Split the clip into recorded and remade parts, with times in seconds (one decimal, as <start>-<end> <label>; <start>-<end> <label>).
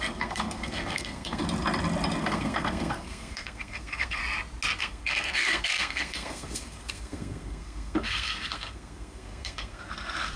0.0-1.4 remade; 1.4-2.2 recorded; 2.2-4.2 remade; 4.2-4.8 recorded; 4.8-10.4 remade